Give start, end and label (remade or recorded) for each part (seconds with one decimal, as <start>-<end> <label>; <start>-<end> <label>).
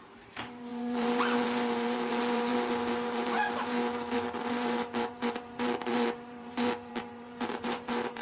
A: 0.0-8.2 remade